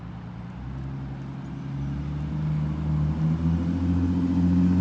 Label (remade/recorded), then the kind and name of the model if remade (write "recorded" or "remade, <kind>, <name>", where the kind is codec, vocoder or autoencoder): recorded